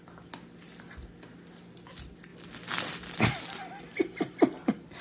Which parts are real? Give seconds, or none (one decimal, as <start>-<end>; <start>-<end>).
0.0-5.0